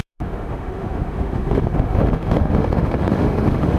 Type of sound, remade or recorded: remade